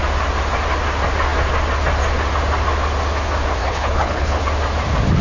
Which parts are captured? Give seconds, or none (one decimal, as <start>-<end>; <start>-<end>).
0.0-3.6; 4.4-5.2